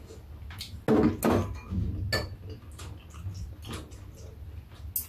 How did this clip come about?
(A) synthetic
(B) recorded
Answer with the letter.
B